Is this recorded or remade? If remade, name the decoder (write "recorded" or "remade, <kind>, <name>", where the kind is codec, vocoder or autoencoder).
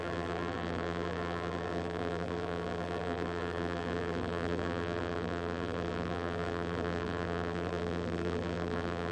remade, vocoder, BigVGAN v2